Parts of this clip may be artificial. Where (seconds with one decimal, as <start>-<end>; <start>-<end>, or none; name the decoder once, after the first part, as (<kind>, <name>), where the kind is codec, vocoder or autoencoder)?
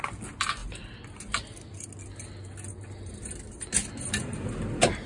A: none